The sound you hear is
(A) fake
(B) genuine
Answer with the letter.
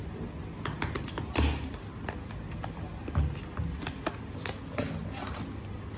B